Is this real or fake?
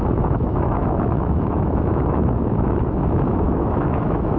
fake